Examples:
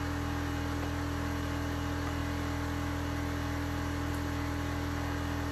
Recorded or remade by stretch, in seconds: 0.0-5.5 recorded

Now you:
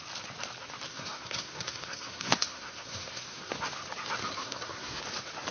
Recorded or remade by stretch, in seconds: 0.0-0.9 recorded; 0.9-3.5 remade; 3.5-4.2 recorded; 4.2-5.0 remade; 5.0-5.5 recorded

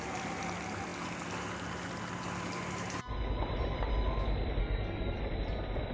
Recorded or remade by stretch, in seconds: 0.0-4.6 recorded; 4.6-5.2 remade; 5.2-5.9 recorded